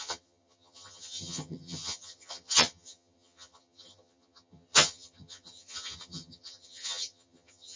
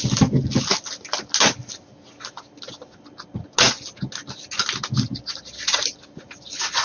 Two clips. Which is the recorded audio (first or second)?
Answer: second